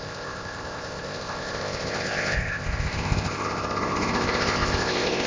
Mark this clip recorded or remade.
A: remade